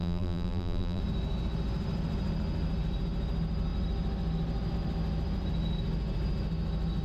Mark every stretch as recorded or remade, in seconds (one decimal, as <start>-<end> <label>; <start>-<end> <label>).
0.0-1.0 remade; 1.0-7.0 recorded